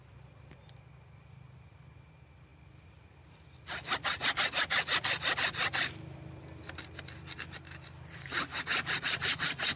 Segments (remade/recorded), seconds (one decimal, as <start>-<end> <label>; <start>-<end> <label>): 0.0-9.8 recorded